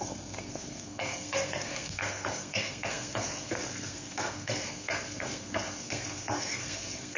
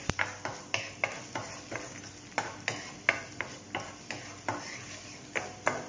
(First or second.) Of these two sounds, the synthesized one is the first